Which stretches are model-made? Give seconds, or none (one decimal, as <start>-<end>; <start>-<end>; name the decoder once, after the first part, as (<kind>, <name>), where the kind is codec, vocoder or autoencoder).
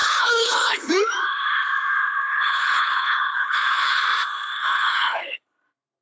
0.0-0.9 (codec, HILCodec); 2.3-4.0; 4.5-5.4